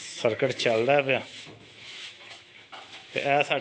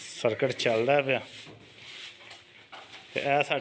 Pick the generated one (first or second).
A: first